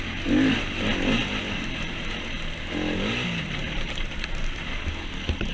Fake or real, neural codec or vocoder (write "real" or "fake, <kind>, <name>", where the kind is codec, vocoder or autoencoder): real